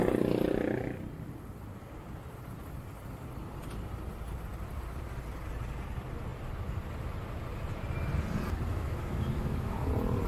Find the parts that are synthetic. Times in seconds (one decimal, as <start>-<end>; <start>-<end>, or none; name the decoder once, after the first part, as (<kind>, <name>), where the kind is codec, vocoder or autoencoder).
8.7-9.9 (autoencoder, DAC-VAE)